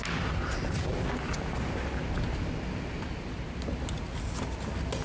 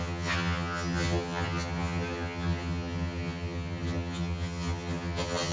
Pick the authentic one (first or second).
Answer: first